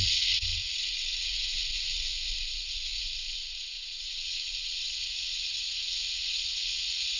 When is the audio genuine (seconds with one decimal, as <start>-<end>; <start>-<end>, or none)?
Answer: none